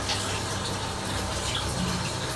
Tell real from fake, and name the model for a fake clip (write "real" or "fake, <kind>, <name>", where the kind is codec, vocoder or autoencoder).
real